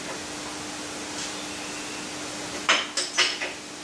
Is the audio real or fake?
real